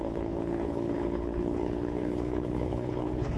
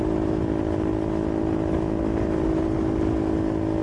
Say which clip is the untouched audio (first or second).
second